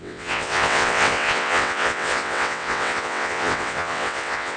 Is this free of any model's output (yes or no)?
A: no